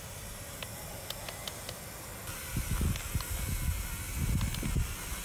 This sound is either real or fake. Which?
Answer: real